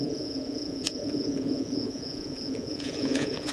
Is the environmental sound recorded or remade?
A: remade